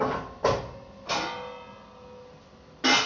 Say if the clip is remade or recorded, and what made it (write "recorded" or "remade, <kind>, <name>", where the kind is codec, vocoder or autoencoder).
recorded